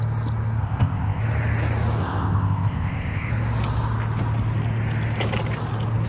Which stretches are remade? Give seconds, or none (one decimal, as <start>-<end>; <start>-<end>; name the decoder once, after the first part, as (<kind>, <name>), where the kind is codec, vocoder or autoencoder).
0.6-1.2 (codec, ZipCodec); 2.0-3.3